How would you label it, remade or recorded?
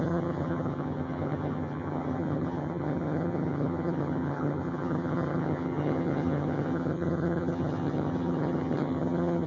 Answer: remade